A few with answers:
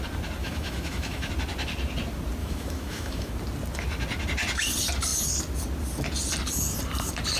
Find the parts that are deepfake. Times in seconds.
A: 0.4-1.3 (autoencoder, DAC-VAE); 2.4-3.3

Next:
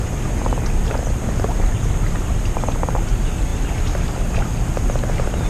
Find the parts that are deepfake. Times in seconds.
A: none

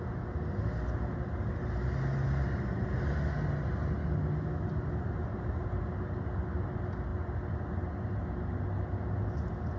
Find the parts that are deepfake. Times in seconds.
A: none

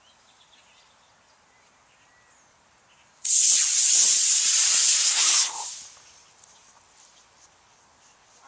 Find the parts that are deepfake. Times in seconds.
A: none

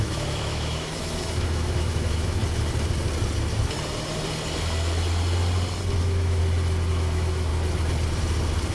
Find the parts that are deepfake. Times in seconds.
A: 0.0-2.4 (autoencoder, DAC-VAE); 6.0-6.4; 6.9-7.5

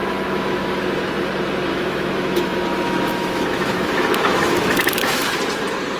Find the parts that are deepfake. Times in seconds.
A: 0.0-0.8 (autoencoder, DAC-VAE); 1.7-5.3

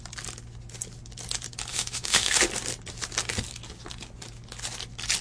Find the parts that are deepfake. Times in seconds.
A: 1.7-2.4 (autoencoder, DAC-VAE)